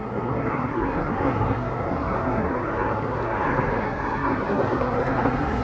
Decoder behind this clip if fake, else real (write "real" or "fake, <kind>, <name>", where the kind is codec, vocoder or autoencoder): fake, codec, SNAC